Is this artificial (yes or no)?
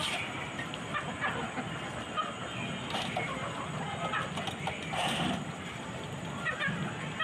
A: no